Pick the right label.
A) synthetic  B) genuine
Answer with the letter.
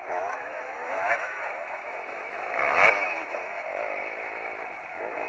A